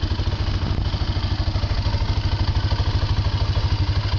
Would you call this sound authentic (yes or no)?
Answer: yes